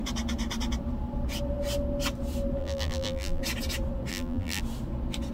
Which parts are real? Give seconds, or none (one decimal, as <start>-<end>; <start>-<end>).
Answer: 0.0-2.6; 3.4-4.1; 4.6-5.3